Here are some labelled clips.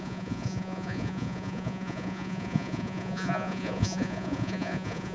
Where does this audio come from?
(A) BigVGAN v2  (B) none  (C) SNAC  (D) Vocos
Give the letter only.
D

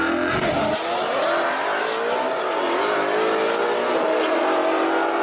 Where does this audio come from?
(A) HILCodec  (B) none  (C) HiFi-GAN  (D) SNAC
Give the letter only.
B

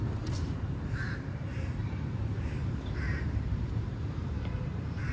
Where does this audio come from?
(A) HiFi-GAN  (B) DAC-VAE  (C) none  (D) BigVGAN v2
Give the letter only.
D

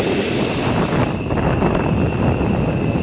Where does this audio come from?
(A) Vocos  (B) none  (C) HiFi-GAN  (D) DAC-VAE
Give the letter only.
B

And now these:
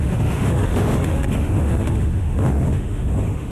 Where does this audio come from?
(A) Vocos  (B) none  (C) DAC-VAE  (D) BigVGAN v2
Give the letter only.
C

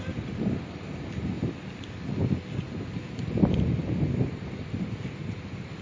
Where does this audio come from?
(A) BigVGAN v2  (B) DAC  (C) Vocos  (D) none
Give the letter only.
D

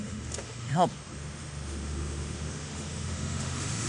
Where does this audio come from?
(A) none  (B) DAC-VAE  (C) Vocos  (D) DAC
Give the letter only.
B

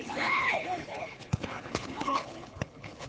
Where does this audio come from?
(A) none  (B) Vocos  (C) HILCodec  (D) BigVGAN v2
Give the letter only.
C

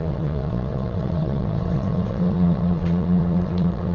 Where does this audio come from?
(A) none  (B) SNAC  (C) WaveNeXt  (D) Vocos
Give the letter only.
C